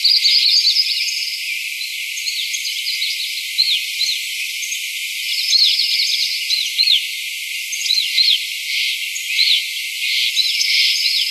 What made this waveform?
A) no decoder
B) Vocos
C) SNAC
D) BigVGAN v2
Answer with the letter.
A